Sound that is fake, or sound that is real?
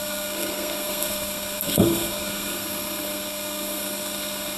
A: fake